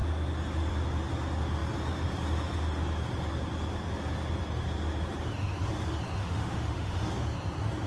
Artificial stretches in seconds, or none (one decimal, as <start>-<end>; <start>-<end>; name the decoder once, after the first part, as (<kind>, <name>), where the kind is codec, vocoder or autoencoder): 6.2-7.1 (autoencoder, DAC-VAE)